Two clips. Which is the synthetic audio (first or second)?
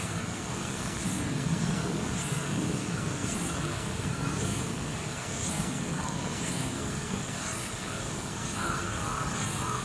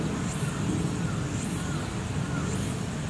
first